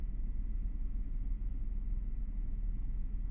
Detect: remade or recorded remade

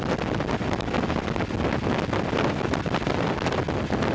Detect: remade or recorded recorded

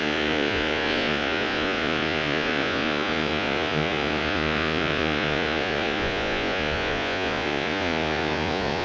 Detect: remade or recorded remade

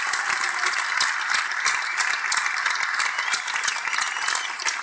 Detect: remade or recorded recorded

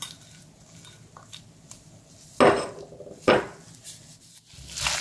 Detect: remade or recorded recorded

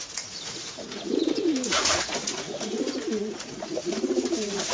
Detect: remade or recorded remade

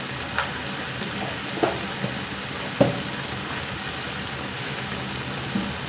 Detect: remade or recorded recorded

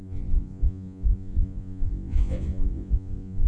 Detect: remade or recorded remade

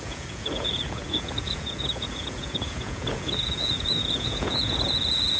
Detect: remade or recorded remade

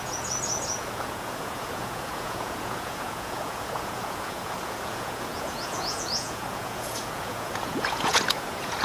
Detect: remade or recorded remade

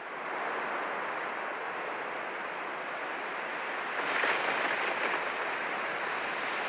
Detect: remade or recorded recorded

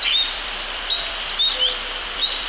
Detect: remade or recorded recorded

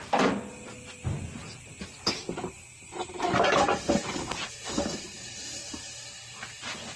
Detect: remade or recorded recorded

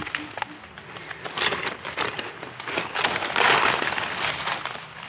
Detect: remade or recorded recorded